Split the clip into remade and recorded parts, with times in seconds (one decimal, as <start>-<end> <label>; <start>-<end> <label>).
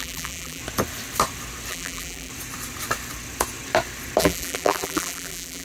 0.0-0.6 remade; 0.6-1.7 recorded; 1.7-2.3 remade; 2.3-4.2 recorded; 4.2-5.6 remade